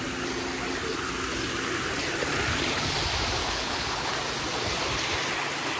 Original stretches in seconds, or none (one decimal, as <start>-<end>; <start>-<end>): 0.0-3.4; 4.1-5.8